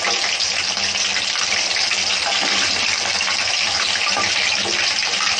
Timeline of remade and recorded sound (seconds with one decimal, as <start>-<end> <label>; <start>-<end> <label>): 0.0-1.1 recorded; 1.1-4.3 remade; 4.3-5.4 recorded